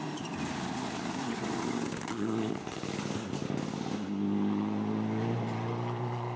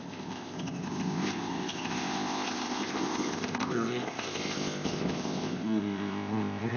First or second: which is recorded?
first